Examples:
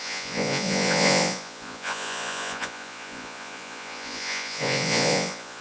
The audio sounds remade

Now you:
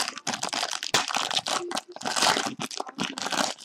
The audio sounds recorded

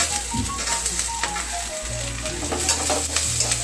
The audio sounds recorded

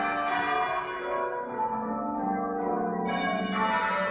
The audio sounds recorded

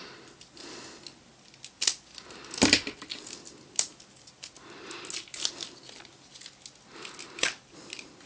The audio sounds recorded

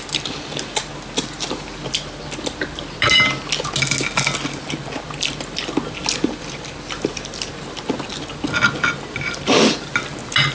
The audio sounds recorded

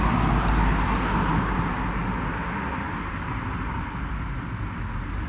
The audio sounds recorded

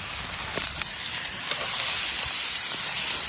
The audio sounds recorded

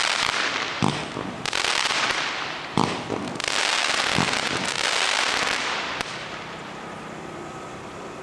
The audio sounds remade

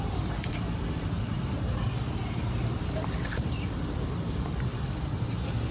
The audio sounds remade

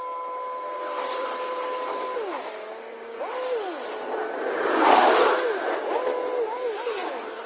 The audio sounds recorded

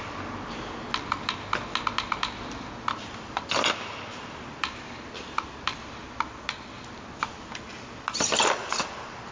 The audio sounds recorded